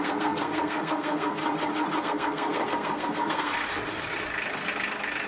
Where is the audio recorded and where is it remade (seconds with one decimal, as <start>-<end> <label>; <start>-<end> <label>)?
0.0-1.4 remade; 1.4-2.0 recorded; 2.0-3.5 remade; 3.5-5.3 recorded